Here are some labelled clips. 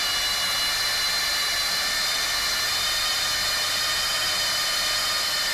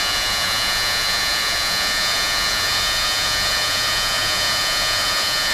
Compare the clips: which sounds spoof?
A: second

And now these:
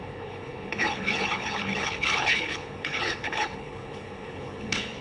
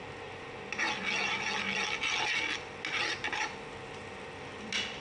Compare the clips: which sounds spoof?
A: first